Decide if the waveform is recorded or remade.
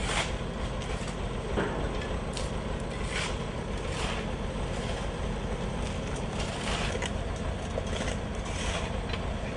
recorded